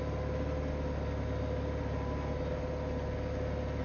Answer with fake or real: real